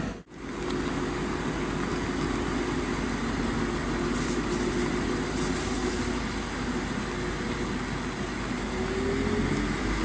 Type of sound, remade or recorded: recorded